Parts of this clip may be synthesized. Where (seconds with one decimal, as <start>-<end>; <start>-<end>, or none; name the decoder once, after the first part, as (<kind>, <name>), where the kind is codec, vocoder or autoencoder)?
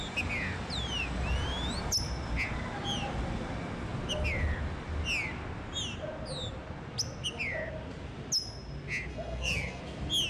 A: 9.1-9.8 (codec, SNAC)